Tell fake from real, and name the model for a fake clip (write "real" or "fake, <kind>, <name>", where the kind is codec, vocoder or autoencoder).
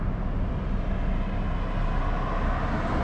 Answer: real